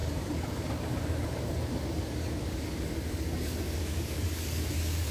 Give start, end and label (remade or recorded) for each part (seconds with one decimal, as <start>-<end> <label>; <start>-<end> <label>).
0.0-5.1 remade